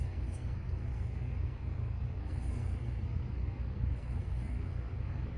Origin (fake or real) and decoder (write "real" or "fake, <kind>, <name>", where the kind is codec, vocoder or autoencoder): fake, codec, SNAC